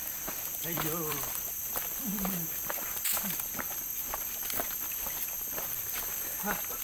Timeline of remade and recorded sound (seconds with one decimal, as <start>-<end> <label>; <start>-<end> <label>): 0.0-0.5 recorded; 0.5-3.5 remade; 3.5-6.8 recorded